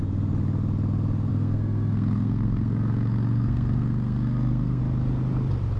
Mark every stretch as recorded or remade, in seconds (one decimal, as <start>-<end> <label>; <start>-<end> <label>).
0.0-1.3 recorded; 1.3-4.8 remade; 4.8-5.8 recorded

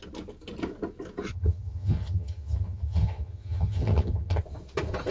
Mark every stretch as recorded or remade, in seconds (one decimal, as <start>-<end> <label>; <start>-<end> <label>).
0.0-1.3 recorded; 1.3-4.4 remade; 4.4-5.1 recorded

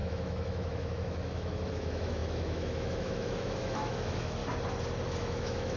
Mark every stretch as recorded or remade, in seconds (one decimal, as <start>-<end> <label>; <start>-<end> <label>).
0.0-4.4 remade; 4.4-5.1 recorded; 5.1-5.8 remade

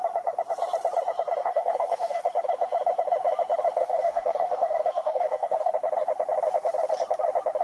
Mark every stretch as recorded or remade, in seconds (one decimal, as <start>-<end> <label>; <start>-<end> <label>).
0.0-1.4 recorded; 1.4-2.2 remade; 2.2-3.8 recorded; 3.8-5.7 remade; 5.7-7.6 recorded

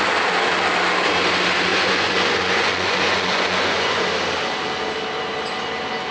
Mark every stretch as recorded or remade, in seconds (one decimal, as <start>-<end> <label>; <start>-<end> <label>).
0.0-1.7 recorded; 1.7-4.0 remade; 4.0-6.1 recorded

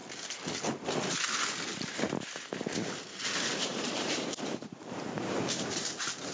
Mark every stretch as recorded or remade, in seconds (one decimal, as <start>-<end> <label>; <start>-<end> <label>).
0.0-1.7 recorded; 1.7-2.3 remade; 2.3-3.7 recorded; 3.7-5.7 remade; 5.7-6.3 recorded

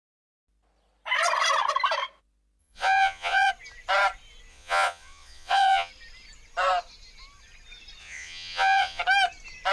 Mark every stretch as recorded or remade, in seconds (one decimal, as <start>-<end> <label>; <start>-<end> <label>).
0.0-2.6 recorded; 2.6-3.5 remade; 3.5-4.5 recorded; 4.5-5.9 remade; 5.9-8.0 recorded; 8.0-9.0 remade; 9.0-9.7 recorded

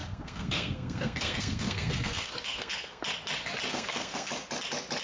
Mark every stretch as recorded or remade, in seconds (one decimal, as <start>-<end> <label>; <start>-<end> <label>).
0.0-3.0 remade; 3.0-3.7 recorded; 3.7-4.3 remade; 4.3-5.0 recorded